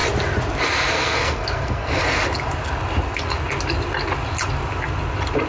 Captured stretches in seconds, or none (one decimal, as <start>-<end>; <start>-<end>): 0.0-0.9; 2.0-5.5

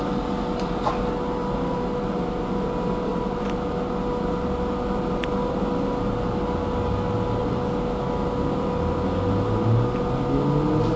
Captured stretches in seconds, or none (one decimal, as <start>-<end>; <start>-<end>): 0.0-11.0